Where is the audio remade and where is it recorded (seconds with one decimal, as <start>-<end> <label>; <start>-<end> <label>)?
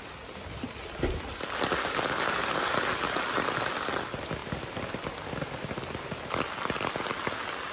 0.0-7.7 recorded